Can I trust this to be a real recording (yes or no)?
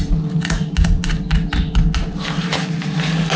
yes